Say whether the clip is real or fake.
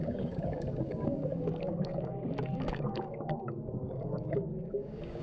fake